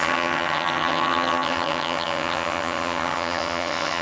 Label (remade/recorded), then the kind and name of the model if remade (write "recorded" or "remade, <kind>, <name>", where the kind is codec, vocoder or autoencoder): remade, vocoder, HiFi-GAN